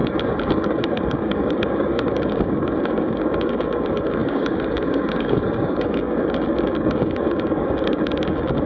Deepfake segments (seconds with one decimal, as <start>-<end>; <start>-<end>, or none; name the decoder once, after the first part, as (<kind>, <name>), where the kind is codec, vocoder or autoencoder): 0.0-8.7 (codec, DAC)